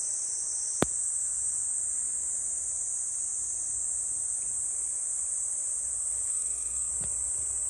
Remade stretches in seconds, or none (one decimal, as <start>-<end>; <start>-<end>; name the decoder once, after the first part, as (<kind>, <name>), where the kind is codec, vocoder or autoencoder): 6.3-6.9 (codec, SNAC)